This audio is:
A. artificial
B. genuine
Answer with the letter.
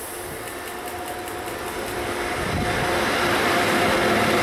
B